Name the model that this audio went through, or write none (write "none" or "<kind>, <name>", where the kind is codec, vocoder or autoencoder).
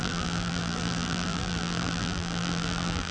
vocoder, BigVGAN v2